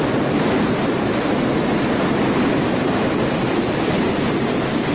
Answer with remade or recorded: recorded